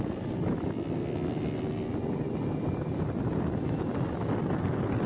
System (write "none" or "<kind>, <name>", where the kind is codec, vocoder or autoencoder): none